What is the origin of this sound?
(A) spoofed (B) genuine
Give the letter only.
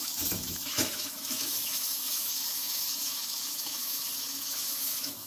A